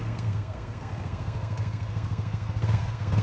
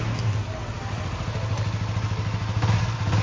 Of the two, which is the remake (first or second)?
first